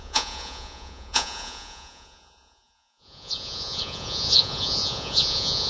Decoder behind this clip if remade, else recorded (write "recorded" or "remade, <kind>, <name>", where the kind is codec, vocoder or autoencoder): remade, vocoder, Vocos